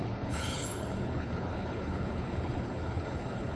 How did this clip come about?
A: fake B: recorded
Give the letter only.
A